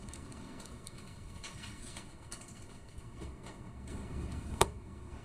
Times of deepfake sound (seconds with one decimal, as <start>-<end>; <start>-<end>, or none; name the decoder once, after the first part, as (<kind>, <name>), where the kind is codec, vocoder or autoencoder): 0.0-5.2 (codec, SNAC)